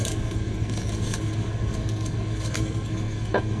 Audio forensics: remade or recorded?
remade